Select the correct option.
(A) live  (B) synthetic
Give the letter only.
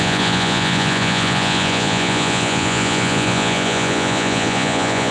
B